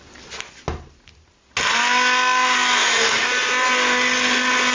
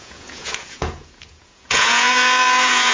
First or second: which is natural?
first